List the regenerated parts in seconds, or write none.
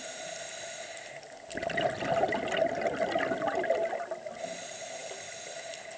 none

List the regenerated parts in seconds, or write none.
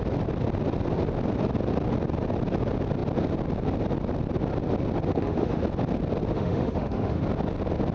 5.1-5.6 (autoencoder, DAC-VAE); 6.3-7.2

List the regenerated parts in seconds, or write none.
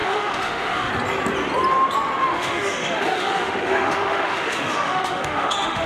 0.0-0.9 (autoencoder, DAC-VAE); 2.2-5.9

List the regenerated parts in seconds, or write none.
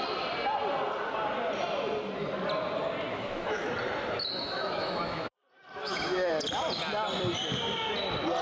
3.1-3.7 (autoencoder, DAC-VAE); 4.3-5.3; 5.8-6.3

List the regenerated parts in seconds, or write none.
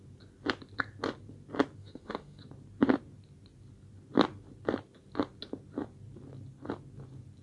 1.8-2.4 (autoencoder, DAC-VAE)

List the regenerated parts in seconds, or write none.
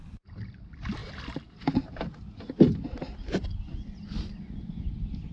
none